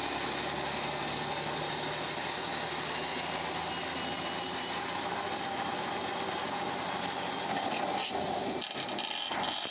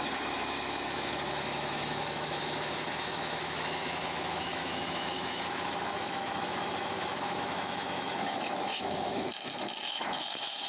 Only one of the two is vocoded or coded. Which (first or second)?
second